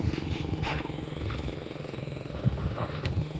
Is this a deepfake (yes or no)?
yes